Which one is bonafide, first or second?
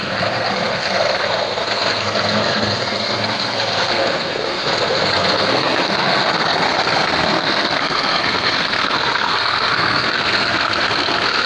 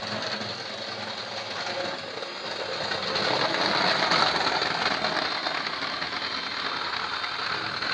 second